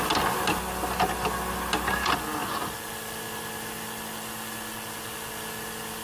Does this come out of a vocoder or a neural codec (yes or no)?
no